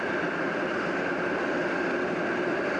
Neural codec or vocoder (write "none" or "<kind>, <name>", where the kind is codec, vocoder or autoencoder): none